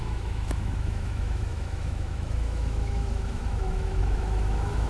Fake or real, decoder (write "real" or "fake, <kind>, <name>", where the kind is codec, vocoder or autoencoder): fake, autoencoder, DAC-VAE